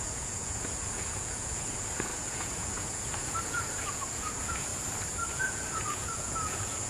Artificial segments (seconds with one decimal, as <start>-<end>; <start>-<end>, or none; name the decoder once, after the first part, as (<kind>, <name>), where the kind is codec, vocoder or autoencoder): 0.0-4.7 (vocoder, Vocos); 5.3-6.9